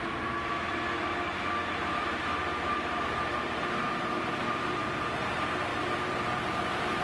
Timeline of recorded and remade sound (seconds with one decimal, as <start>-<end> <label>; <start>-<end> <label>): 0.0-2.0 recorded; 2.0-5.3 remade; 5.3-5.7 recorded; 5.7-7.0 remade